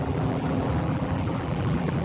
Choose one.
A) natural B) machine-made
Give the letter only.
B